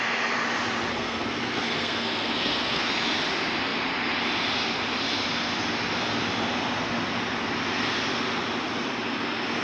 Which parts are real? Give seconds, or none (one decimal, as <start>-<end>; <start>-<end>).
0.0-0.9; 2.9-9.6